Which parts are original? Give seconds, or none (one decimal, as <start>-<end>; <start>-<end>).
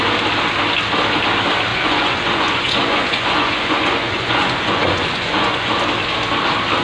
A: 0.0-1.7; 5.8-6.8